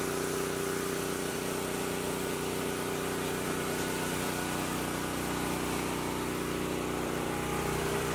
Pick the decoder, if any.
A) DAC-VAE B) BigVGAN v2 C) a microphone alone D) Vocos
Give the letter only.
B